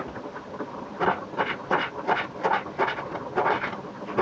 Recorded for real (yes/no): yes